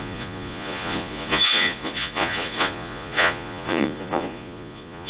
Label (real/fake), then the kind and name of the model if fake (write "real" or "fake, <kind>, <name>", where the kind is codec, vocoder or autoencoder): fake, vocoder, Vocos